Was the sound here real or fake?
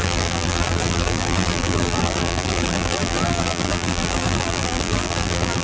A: fake